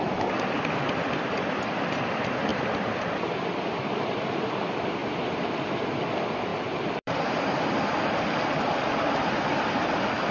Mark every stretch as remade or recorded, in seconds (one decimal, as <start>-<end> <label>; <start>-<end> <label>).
0.0-2.5 recorded; 2.5-3.9 remade; 3.9-5.0 recorded; 5.0-5.6 remade; 5.6-6.5 recorded; 6.5-9.9 remade; 9.9-10.3 recorded